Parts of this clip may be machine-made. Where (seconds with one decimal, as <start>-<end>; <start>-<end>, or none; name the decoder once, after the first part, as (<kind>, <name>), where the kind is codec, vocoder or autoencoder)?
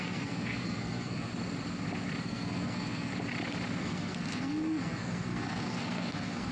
0.0-1.3 (codec, SNAC); 2.2-3.1; 3.8-6.5